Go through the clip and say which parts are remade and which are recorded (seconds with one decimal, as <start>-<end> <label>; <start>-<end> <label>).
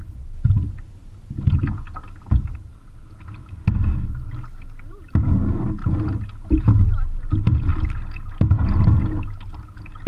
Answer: 0.0-10.1 recorded